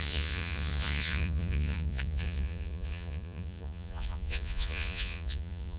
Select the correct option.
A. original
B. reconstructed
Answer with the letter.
B